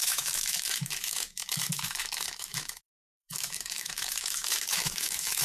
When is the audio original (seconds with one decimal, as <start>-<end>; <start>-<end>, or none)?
none